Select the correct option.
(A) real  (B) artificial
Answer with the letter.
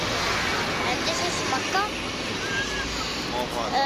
A